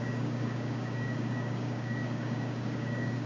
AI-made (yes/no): yes